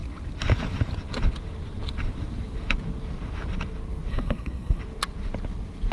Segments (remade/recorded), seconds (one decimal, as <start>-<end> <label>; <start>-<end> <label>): 0.0-4.1 recorded; 4.1-4.8 remade; 4.8-5.9 recorded